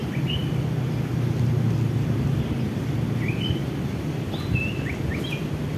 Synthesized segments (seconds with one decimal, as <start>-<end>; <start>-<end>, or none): none